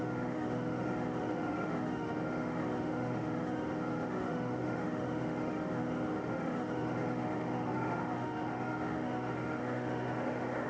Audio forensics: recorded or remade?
remade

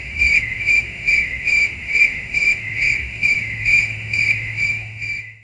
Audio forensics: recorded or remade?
remade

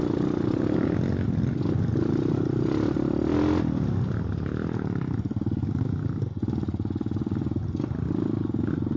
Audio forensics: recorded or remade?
recorded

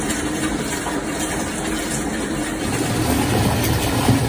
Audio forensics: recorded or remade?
remade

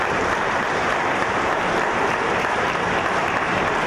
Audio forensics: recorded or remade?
remade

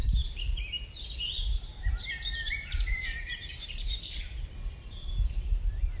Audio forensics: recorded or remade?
remade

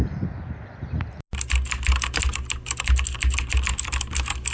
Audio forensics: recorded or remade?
recorded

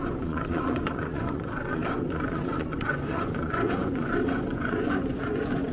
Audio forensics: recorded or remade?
remade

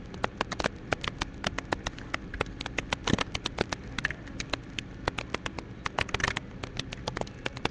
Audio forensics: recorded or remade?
recorded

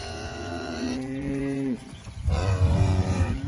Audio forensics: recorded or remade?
remade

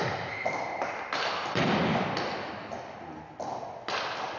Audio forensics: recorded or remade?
recorded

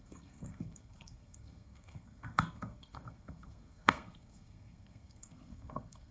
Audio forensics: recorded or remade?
remade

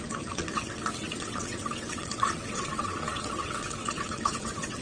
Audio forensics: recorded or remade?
remade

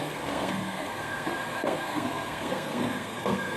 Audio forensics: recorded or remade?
remade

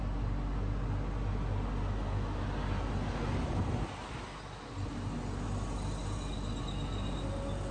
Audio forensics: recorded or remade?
recorded